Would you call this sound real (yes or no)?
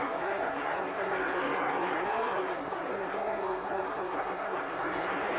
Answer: no